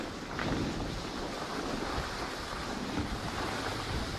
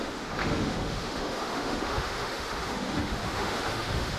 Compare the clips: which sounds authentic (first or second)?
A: first